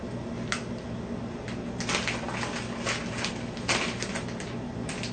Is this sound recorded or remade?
recorded